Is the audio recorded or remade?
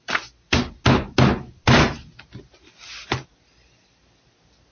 recorded